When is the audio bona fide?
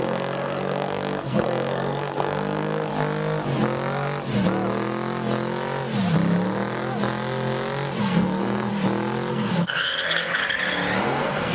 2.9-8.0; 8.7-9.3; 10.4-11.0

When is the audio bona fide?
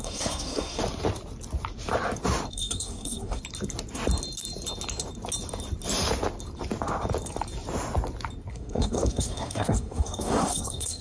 0.8-2.5; 3.4-8.5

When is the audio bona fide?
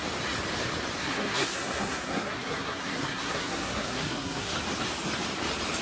0.0-1.0; 4.5-5.8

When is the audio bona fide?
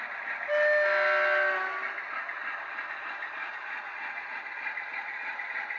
0.0-3.4; 4.4-5.8